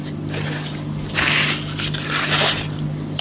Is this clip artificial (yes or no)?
no